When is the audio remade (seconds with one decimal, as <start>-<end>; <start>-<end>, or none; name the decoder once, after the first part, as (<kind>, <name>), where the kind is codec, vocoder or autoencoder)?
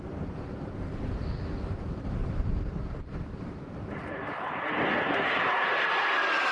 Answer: 2.2-6.1 (vocoder, BigVGAN v2)